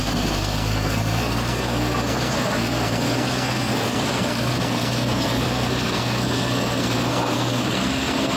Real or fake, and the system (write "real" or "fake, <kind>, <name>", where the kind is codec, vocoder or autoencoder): fake, codec, SNAC